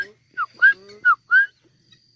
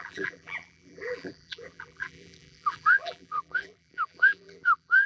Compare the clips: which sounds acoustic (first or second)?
first